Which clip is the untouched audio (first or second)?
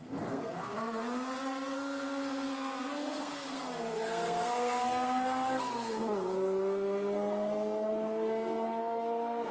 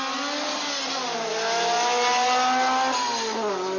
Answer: second